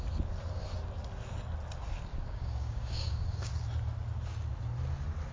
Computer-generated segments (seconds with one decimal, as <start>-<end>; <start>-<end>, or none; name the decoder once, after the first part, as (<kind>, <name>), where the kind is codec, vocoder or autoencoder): 2.1-3.5 (codec, DAC)